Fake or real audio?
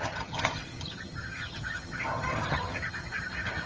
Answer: fake